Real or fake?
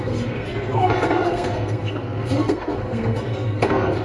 fake